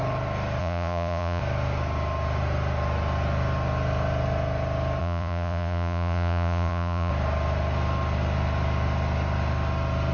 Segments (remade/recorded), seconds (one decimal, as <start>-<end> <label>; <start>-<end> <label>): 0.0-0.6 recorded; 0.6-1.4 remade; 1.4-5.0 recorded; 5.0-7.1 remade; 7.1-10.1 recorded